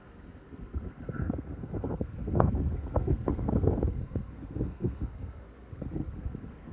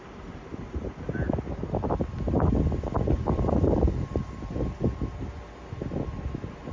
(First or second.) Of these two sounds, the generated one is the first